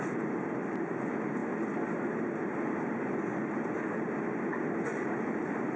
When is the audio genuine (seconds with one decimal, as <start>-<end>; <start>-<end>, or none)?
0.0-5.8